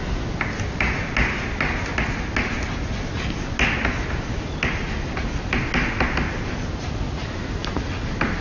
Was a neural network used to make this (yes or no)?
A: no